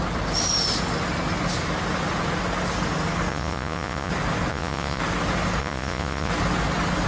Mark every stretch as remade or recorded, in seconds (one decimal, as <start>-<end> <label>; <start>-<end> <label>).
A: 0.0-3.3 recorded; 3.3-4.1 remade; 4.1-4.5 recorded; 4.5-5.0 remade; 5.0-5.6 recorded; 5.6-6.3 remade; 6.3-7.1 recorded